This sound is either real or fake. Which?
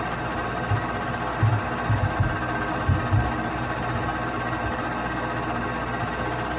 real